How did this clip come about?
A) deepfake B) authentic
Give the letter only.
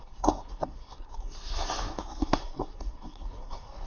A